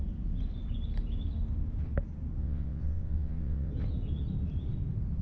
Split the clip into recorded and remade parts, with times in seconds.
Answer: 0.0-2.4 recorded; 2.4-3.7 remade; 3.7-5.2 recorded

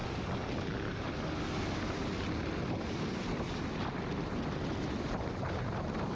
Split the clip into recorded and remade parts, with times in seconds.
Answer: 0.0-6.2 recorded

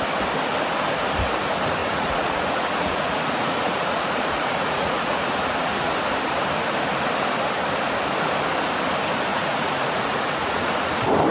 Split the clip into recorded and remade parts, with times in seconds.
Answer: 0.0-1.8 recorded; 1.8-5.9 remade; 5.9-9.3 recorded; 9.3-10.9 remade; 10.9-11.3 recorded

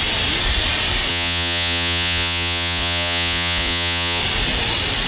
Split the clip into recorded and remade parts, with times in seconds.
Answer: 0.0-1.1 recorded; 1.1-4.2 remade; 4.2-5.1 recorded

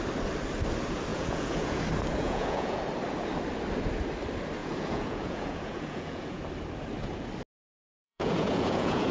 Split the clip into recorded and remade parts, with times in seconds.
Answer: 0.0-1.1 recorded; 1.1-1.8 remade; 1.8-2.2 recorded; 2.2-2.8 remade; 2.8-4.6 recorded; 4.6-6.4 remade; 6.4-7.9 recorded; 7.9-9.1 remade

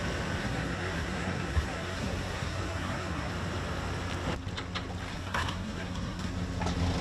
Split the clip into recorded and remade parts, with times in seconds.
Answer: 0.0-0.4 recorded; 0.4-3.3 remade; 3.3-5.1 recorded; 5.1-6.3 remade; 6.3-7.0 recorded

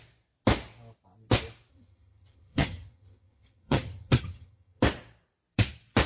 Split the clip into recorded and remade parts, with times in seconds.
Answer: 0.0-1.7 recorded; 1.7-4.8 remade; 4.8-6.1 recorded

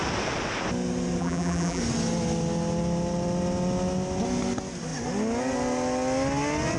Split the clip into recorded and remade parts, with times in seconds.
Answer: 0.0-1.2 recorded; 1.2-1.8 remade; 1.8-6.8 recorded